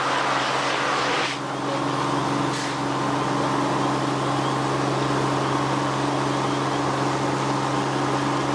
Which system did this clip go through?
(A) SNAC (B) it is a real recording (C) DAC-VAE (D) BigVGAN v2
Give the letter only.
B